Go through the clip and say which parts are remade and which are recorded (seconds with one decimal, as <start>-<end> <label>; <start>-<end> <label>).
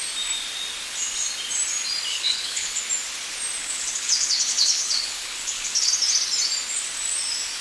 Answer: 0.0-2.1 recorded; 2.1-2.8 remade; 2.8-3.6 recorded; 3.6-5.9 remade; 5.9-7.6 recorded